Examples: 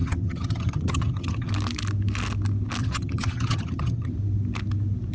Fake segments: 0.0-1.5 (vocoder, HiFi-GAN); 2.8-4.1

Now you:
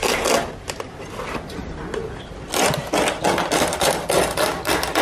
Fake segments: none

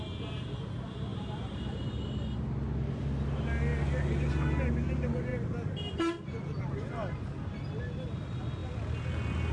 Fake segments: 1.1-2.0 (vocoder, BigVGAN v2)

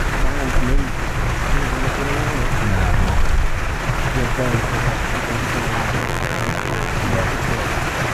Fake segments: 6.0-6.9 (vocoder, BigVGAN v2)

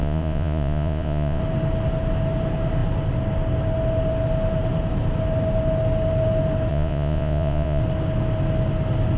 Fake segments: 0.0-1.4 (vocoder, Vocos); 6.7-7.8

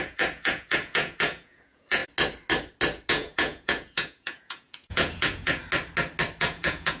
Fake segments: 0.0-2.0 (vocoder, Vocos); 3.1-5.6; 6.4-7.0

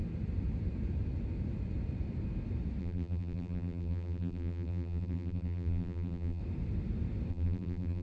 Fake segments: 2.8-6.4 (vocoder, BigVGAN v2); 7.3-8.0